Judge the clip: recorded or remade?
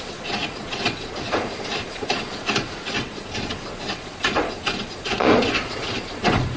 remade